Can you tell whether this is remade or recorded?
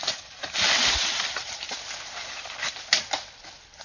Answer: recorded